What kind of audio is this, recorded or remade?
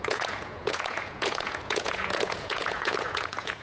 remade